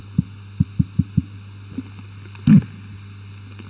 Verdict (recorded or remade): recorded